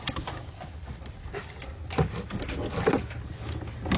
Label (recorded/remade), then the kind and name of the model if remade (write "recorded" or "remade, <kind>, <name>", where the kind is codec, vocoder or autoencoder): recorded